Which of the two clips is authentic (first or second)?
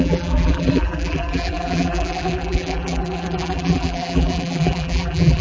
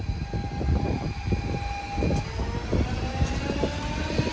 second